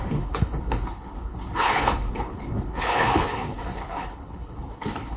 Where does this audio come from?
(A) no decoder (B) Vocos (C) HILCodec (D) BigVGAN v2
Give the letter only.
C